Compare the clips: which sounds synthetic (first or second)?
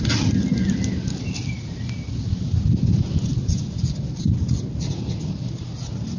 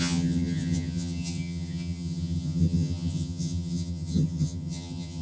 second